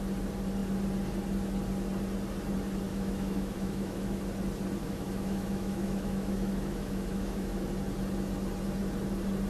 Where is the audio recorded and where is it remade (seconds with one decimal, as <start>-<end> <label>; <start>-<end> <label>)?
0.0-2.9 recorded; 2.9-4.2 remade; 4.2-4.8 recorded; 4.8-7.6 remade; 7.6-9.5 recorded